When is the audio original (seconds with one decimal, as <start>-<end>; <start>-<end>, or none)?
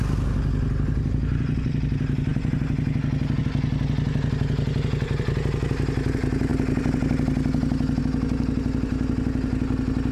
0.0-10.1